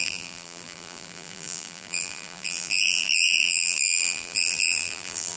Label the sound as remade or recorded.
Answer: remade